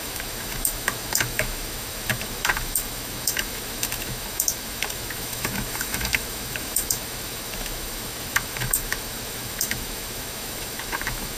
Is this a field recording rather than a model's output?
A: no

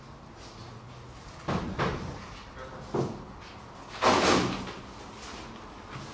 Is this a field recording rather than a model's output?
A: yes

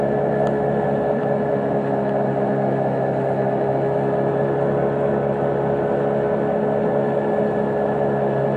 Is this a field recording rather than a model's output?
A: yes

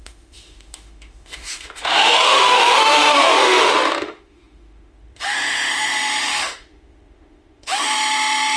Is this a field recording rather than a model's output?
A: no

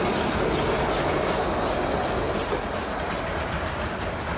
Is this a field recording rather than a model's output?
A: yes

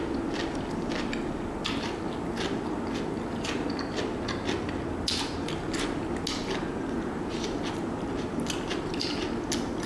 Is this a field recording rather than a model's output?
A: yes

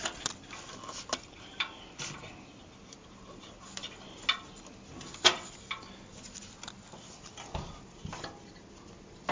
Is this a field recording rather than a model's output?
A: yes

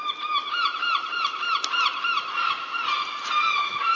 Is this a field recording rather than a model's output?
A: yes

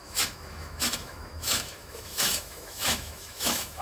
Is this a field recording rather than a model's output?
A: no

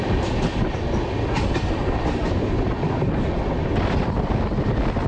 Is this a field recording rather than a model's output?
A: yes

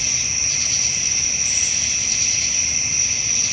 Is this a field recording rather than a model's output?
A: yes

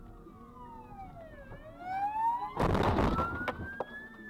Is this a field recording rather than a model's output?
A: yes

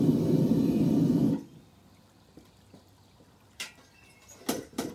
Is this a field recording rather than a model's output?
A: yes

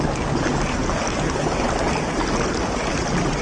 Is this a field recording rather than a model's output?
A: yes